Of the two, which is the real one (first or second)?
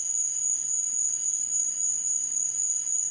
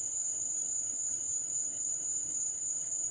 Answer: first